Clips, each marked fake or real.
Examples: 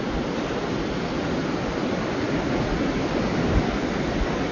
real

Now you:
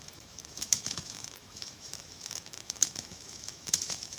fake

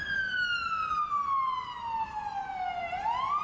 real